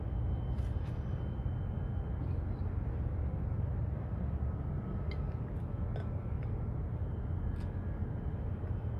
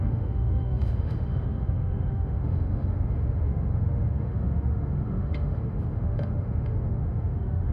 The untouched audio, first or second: first